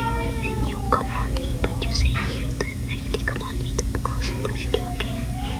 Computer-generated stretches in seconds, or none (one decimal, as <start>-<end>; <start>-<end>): 0.0-5.6